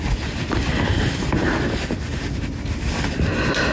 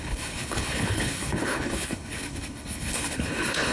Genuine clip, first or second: first